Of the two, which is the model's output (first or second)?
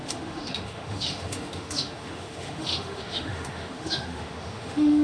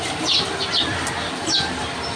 first